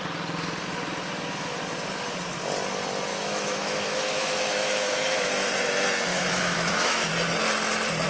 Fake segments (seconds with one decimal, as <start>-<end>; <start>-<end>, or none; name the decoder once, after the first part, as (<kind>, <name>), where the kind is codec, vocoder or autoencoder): 3.1-5.3 (autoencoder, DAC-VAE); 6.1-7.1